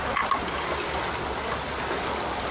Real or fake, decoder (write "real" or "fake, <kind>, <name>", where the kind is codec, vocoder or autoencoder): real